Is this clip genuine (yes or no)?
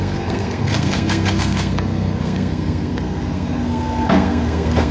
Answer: no